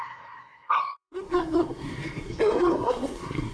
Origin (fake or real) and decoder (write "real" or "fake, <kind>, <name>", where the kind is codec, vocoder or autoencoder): fake, codec, SNAC